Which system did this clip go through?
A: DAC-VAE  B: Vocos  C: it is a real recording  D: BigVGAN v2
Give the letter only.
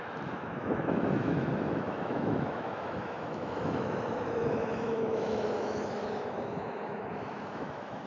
A